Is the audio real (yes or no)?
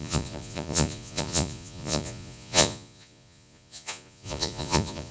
no